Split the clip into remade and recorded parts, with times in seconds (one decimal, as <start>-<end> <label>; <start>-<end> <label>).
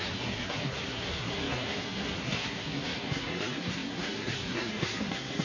0.0-5.4 remade